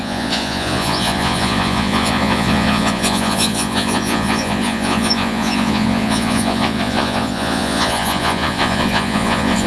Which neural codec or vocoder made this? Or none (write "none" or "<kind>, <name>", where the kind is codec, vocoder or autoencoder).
vocoder, Vocos